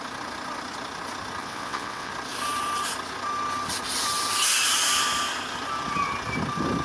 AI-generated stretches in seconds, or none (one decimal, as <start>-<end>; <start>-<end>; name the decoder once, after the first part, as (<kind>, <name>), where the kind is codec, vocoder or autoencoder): 1.4-2.1 (vocoder, WaveNeXt)